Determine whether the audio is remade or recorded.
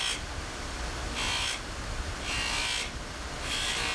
recorded